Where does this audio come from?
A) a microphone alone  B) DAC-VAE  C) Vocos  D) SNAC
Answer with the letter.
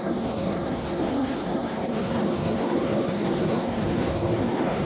D